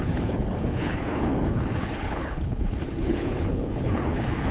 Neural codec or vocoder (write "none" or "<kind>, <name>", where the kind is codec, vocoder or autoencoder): codec, HILCodec